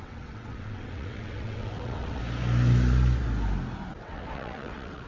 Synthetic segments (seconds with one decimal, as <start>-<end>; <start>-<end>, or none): 0.0-2.2; 4.0-5.1